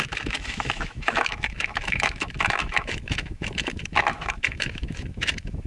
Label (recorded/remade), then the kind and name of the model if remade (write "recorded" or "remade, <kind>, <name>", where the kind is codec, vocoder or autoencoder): remade, autoencoder, DAC-VAE